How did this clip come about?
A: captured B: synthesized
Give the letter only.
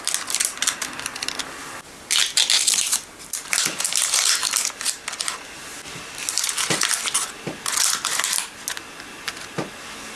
A